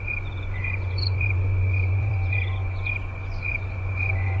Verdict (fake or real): fake